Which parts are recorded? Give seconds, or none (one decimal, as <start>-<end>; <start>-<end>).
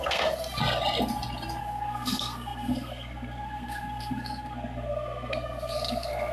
0.6-1.6